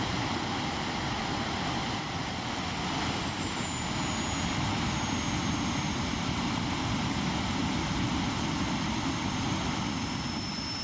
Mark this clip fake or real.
fake